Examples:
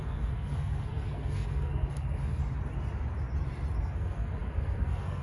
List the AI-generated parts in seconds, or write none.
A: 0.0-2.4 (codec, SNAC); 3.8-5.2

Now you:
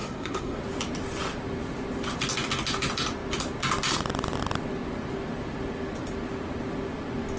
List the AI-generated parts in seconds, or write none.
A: 0.0-0.6 (codec, SNAC)

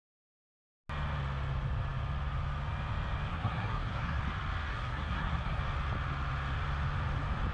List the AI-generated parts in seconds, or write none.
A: 3.3-4.2 (codec, SNAC); 4.7-5.6

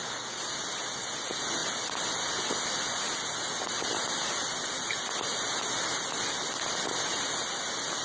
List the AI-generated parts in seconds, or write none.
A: none

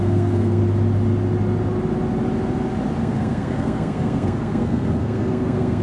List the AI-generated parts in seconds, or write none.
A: 0.0-0.6 (codec, SNAC); 3.0-5.8

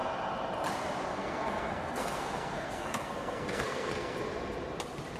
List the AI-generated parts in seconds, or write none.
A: 1.1-4.2 (codec, SNAC)

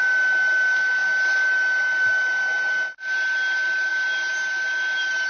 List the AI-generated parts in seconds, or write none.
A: none

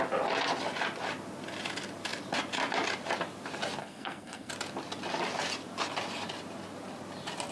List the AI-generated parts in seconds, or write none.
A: 3.8-4.5 (codec, SNAC)